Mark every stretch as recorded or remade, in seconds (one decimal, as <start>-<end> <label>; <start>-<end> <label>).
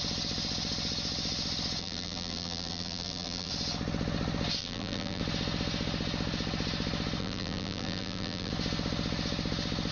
0.0-1.8 recorded; 1.8-3.5 remade; 3.5-4.6 recorded; 4.6-5.2 remade; 5.2-7.2 recorded; 7.2-8.5 remade; 8.5-9.9 recorded